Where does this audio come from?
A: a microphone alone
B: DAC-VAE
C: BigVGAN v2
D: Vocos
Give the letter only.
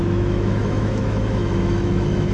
B